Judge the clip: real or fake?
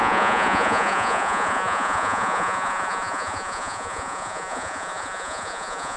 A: fake